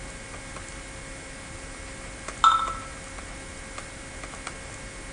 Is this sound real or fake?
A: real